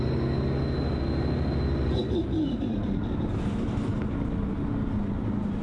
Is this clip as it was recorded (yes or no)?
yes